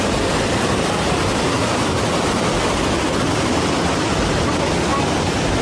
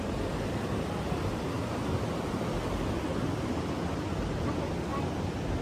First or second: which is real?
second